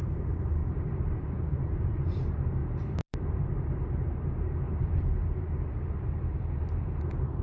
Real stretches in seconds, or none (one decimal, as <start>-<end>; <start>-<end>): none